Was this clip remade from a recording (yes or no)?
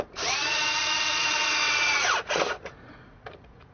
yes